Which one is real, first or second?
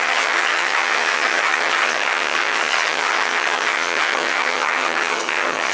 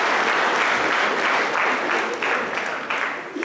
second